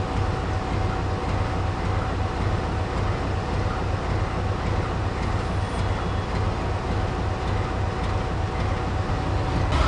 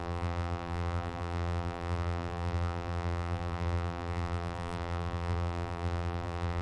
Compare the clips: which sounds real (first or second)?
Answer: first